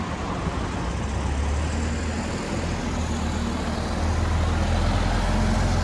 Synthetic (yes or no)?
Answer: no